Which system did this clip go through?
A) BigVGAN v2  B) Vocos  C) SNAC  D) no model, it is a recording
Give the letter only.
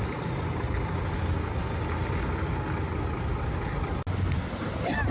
D